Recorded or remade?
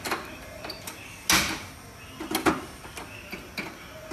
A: recorded